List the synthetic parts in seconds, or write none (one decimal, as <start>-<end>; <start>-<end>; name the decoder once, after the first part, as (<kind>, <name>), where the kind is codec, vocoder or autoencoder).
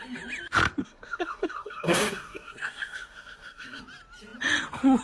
0.8-3.8 (codec, SNAC)